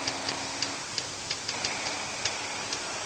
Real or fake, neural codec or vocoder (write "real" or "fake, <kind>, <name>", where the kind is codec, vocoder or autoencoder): real